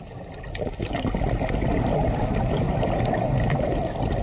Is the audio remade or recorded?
recorded